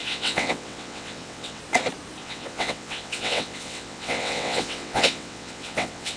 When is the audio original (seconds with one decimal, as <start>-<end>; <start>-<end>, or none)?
1.6-2.2